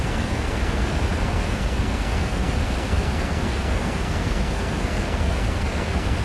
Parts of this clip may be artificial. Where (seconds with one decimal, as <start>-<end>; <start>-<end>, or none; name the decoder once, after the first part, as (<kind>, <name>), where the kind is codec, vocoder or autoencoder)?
0.0-6.2 (codec, SNAC)